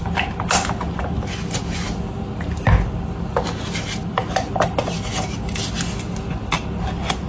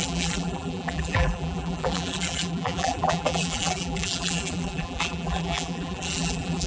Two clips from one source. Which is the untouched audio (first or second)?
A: first